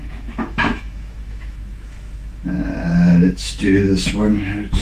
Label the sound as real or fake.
fake